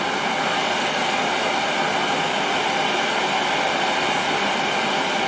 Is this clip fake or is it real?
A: real